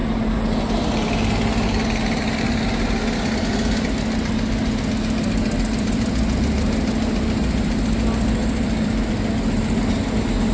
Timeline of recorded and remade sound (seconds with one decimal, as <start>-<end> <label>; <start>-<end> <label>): 0.0-10.5 recorded